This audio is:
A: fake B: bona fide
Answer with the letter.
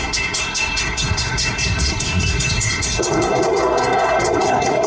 A